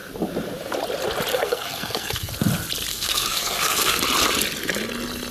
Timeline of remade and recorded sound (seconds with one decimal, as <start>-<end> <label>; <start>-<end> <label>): 0.0-1.3 recorded; 1.3-2.3 remade; 2.3-2.9 recorded; 2.9-4.0 remade; 4.0-5.3 recorded